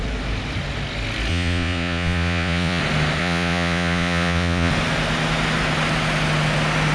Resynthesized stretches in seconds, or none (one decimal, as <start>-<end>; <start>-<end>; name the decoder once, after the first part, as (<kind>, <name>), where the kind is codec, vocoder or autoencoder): 1.3-2.8 (vocoder, Vocos); 3.2-4.7